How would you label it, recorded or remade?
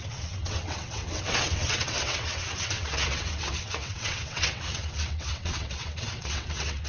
remade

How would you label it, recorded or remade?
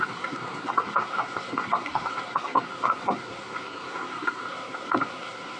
remade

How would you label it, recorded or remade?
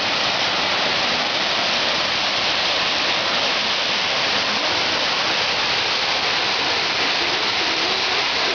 remade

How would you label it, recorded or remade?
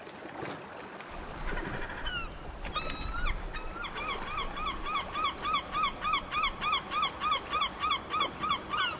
recorded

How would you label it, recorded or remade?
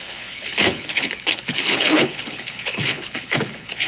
remade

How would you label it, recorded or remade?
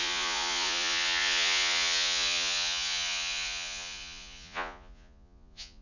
remade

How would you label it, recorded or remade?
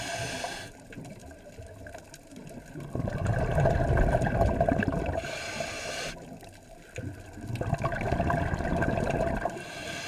recorded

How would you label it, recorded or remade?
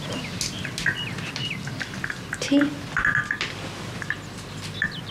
recorded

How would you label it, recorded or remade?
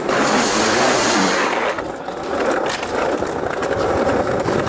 recorded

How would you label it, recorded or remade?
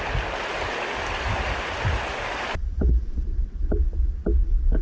recorded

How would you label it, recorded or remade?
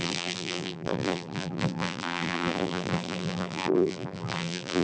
remade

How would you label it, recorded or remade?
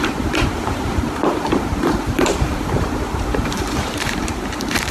remade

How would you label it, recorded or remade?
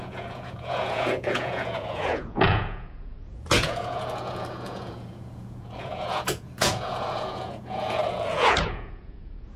remade